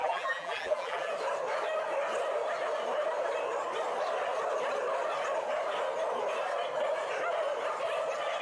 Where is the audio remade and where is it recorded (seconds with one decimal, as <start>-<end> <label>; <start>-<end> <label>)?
0.0-1.1 remade; 1.1-8.4 recorded